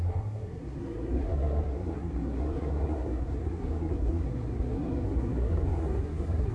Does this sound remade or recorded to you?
remade